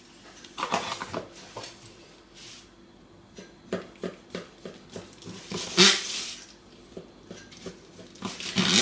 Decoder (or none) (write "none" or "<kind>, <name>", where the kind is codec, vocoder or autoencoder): none